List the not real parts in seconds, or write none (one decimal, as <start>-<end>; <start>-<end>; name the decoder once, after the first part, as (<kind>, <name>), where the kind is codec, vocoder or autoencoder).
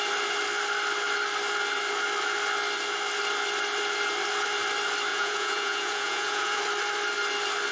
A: 5.1-6.6 (vocoder, Vocos)